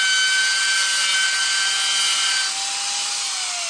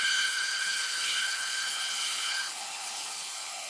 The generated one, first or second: second